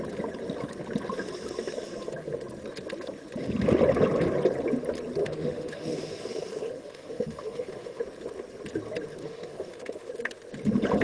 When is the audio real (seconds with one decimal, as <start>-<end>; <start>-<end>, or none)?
0.0-5.2; 8.0-9.2; 10.1-11.0